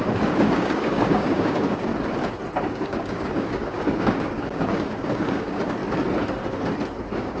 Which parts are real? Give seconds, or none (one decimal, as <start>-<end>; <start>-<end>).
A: 1.9-2.7; 5.8-7.0